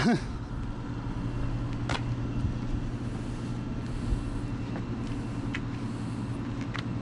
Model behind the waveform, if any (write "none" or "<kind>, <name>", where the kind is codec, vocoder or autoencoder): none